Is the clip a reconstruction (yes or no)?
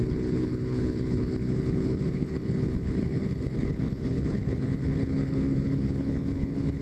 yes